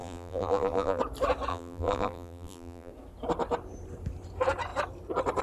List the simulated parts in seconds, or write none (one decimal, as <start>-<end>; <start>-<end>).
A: 0.0-1.0; 1.5-2.9

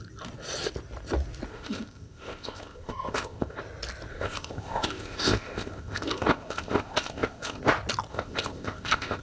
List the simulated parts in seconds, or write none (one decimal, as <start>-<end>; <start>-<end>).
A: 1.5-3.6; 4.1-7.6; 8.1-9.2